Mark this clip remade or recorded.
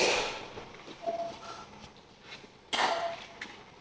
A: recorded